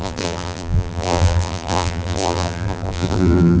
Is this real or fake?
fake